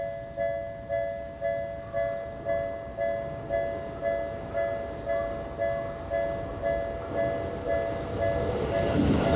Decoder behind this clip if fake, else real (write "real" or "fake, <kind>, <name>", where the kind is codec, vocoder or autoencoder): real